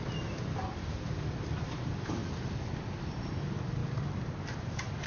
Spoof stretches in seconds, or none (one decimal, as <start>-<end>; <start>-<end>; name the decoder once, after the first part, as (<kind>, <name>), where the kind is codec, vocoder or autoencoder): none